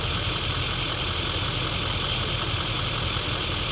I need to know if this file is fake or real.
real